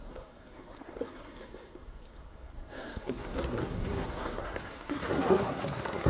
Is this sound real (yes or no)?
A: no